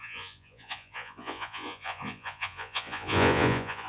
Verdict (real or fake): fake